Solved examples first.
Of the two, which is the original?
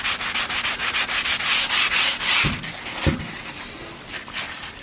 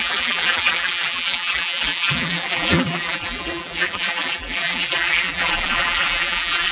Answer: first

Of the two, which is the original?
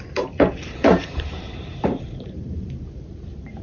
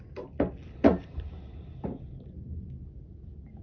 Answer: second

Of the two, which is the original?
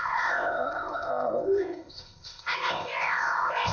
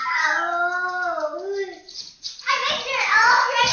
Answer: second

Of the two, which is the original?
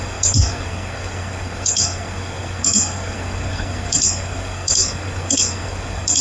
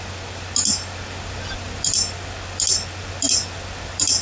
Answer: second